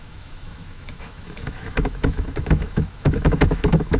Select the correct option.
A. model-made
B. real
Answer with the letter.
A